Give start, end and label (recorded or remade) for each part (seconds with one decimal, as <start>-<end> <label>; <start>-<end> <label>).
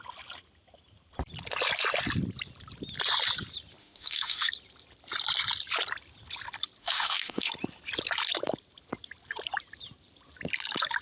0.0-3.8 recorded; 3.8-4.5 remade; 4.5-6.8 recorded; 6.8-7.5 remade; 7.5-11.0 recorded